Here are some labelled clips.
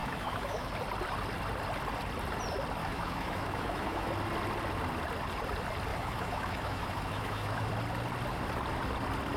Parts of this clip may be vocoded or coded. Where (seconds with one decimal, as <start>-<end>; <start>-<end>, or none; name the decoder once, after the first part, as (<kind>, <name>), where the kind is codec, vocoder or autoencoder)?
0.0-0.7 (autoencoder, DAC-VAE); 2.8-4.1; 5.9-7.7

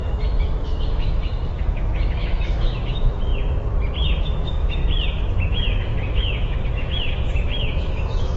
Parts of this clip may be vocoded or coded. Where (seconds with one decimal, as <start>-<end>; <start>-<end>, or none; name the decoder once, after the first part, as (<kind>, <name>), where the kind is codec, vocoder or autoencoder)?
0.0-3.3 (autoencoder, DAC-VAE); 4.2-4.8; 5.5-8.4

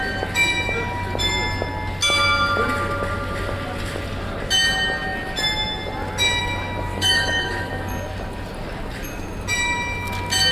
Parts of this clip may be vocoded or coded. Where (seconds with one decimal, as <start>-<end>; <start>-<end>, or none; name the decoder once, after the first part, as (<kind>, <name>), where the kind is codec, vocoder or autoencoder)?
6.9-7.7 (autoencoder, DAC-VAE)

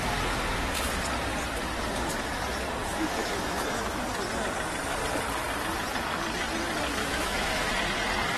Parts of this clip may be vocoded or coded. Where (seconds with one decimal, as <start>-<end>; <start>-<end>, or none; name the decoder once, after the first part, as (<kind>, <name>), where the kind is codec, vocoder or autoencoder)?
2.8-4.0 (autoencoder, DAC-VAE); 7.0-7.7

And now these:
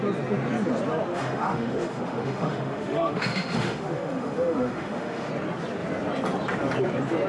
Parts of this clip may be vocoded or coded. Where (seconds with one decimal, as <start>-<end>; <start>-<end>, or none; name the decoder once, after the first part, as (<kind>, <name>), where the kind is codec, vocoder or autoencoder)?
1.1-5.3 (autoencoder, DAC-VAE)